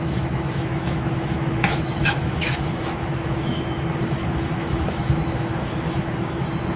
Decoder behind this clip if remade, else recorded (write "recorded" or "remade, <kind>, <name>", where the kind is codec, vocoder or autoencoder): remade, autoencoder, DAC-VAE